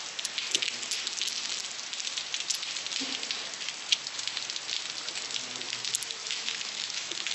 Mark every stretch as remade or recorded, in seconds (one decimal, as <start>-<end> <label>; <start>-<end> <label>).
0.0-6.2 recorded; 6.2-7.3 remade